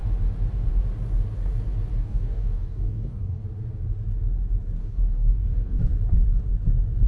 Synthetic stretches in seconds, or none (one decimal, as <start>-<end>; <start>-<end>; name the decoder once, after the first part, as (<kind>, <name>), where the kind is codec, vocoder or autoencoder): 2.0-3.4 (codec, DAC); 4.8-5.8